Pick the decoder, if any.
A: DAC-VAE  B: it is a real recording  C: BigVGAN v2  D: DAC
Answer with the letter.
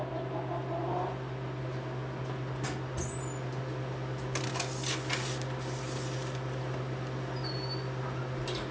B